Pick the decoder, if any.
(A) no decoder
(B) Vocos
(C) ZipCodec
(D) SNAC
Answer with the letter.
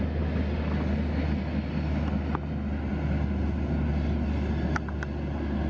A